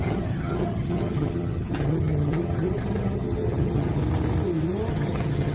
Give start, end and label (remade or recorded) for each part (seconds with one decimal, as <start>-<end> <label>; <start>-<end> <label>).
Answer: 0.0-4.0 remade; 4.0-4.9 recorded; 4.9-5.5 remade